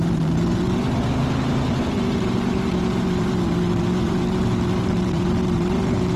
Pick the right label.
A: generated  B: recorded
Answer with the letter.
A